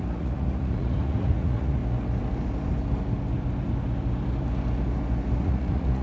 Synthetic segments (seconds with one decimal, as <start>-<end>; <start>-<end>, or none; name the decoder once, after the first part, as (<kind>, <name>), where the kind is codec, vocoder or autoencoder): 0.0-1.8 (vocoder, Vocos); 5.4-6.0